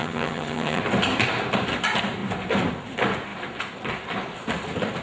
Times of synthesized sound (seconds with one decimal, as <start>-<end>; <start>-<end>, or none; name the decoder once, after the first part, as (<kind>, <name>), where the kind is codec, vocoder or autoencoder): 0.0-0.8 (vocoder, HiFi-GAN)